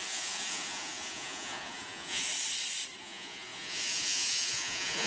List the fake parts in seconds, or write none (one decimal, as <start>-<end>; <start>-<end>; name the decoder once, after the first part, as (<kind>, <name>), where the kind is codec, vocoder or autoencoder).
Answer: 0.0-2.3 (vocoder, Vocos); 3.0-5.1